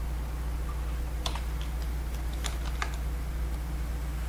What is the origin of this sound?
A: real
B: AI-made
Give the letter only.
A